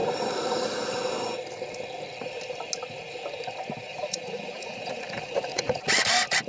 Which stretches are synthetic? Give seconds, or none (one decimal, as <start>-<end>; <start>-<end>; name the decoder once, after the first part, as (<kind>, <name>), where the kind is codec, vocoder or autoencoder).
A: 3.9-5.8 (vocoder, Vocos)